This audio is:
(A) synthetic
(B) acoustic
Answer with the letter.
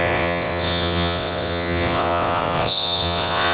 A